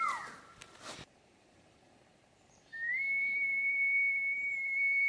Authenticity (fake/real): fake